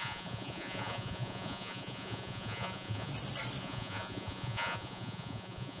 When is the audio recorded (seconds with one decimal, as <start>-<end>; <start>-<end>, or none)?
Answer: 3.1-3.6